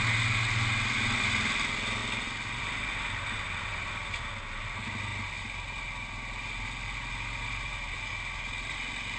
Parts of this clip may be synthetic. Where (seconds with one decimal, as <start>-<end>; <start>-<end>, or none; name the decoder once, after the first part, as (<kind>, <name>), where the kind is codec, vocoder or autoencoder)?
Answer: none